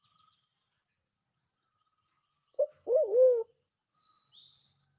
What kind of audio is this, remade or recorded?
recorded